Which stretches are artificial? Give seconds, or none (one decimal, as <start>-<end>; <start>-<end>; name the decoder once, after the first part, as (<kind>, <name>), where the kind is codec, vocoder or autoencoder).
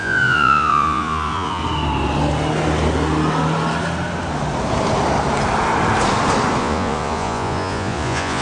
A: 0.0-1.6 (vocoder, Vocos); 6.6-8.4